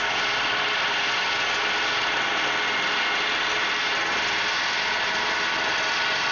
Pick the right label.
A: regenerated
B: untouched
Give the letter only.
B